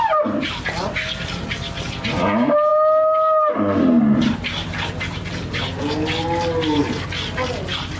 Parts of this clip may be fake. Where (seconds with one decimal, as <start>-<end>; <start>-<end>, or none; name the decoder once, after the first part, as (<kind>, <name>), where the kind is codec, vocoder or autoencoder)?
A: none